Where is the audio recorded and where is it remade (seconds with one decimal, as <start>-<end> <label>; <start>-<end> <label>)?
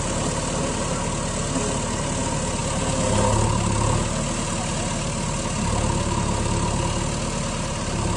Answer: 0.0-8.2 recorded